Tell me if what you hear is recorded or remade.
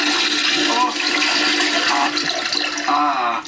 recorded